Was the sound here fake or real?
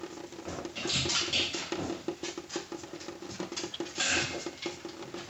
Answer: real